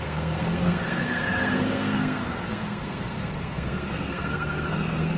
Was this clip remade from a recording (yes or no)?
yes